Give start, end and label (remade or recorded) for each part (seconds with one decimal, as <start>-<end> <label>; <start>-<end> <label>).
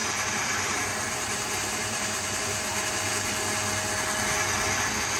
0.0-3.1 remade; 3.1-5.2 recorded